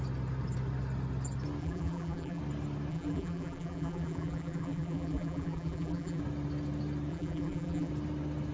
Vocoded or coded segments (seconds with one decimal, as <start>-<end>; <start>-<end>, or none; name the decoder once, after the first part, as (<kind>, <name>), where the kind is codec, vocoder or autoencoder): 1.6-2.4 (vocoder, BigVGAN v2); 2.9-6.2; 7.1-7.9